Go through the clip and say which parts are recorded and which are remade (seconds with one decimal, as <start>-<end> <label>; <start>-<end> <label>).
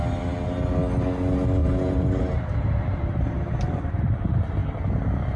0.0-1.6 recorded; 1.6-3.8 remade; 3.8-5.4 recorded